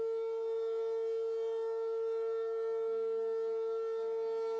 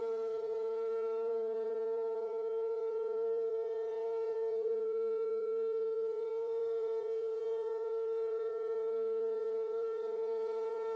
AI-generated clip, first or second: second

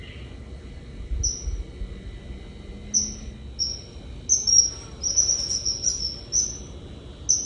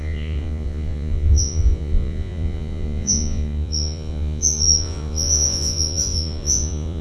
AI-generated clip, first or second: second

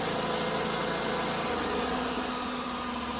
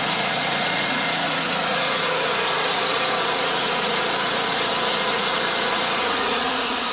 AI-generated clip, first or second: second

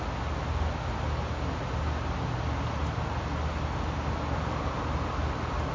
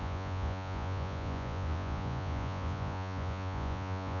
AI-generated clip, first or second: second